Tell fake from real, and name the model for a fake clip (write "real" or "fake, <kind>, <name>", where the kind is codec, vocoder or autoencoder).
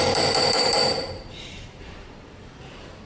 fake, vocoder, BigVGAN v2